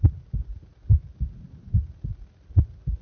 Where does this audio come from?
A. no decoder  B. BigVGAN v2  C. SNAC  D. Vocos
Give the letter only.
A